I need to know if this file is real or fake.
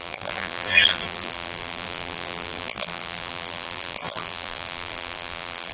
fake